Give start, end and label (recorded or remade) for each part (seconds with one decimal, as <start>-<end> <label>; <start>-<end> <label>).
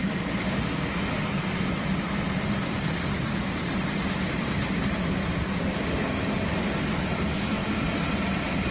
0.0-8.7 recorded